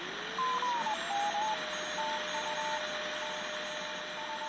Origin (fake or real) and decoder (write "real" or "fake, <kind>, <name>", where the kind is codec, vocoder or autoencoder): real